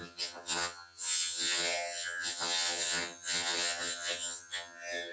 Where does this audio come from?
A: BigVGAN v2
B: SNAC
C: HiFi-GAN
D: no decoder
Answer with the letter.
C